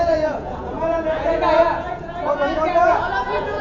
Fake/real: fake